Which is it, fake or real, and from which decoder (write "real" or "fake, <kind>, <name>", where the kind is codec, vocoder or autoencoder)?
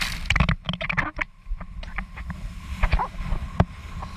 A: real